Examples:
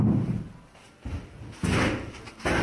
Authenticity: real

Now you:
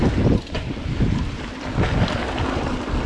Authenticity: real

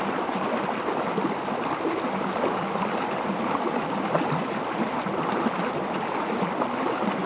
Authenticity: real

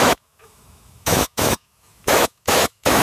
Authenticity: fake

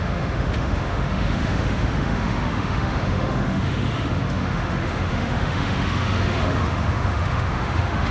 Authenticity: fake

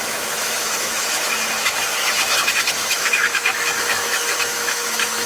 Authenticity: fake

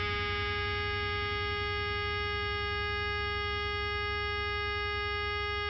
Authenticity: real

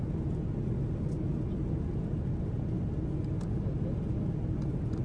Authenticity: real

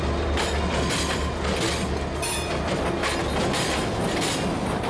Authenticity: real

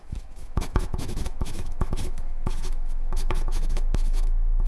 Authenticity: fake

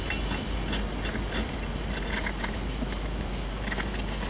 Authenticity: real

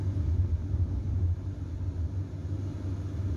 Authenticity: real